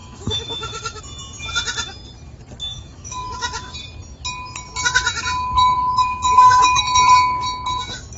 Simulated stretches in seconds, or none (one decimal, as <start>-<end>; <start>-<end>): 0.0-1.0; 2.6-3.6; 5.8-6.8